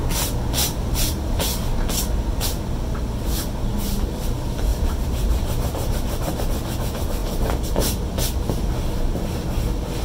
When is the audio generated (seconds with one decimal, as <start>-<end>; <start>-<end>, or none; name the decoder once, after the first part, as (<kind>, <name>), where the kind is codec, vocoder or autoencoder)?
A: 0.6-1.5 (vocoder, BigVGAN v2); 4.7-6.4